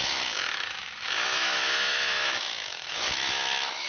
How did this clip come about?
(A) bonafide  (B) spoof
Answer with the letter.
B